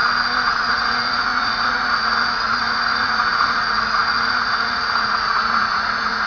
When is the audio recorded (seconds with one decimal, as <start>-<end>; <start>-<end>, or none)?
0.0-0.5

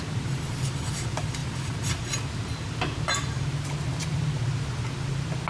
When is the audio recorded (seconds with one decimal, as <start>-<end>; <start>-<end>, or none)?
0.0-5.5

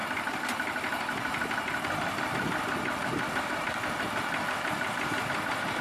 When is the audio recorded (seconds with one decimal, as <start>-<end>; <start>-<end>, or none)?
0.0-5.8

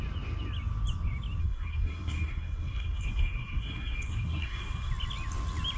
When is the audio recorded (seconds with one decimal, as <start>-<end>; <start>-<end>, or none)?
0.0-1.4; 4.9-5.8

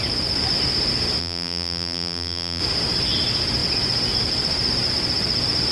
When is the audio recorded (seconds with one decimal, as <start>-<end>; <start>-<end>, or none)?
0.0-1.2; 2.6-5.7